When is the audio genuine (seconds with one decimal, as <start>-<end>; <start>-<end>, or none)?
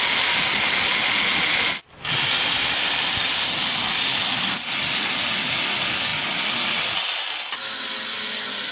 0.0-8.7